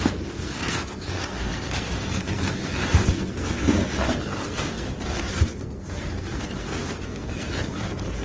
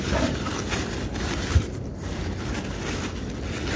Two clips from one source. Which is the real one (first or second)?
second